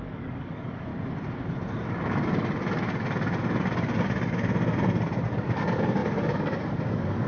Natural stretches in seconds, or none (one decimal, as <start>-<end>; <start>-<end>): 0.9-5.3